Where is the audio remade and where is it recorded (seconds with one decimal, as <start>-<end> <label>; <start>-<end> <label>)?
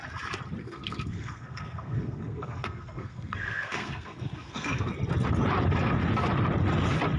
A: 0.0-0.6 recorded; 0.6-4.9 remade; 4.9-7.2 recorded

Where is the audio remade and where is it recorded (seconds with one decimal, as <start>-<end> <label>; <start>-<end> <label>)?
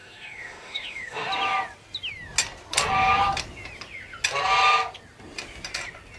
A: 0.0-1.3 remade; 1.3-6.2 recorded